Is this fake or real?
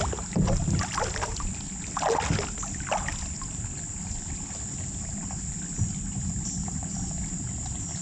real